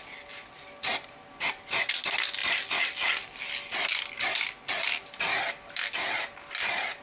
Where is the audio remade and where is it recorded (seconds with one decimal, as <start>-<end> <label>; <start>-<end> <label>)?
0.0-7.0 recorded